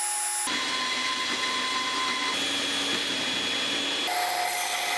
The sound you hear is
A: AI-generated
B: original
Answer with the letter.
B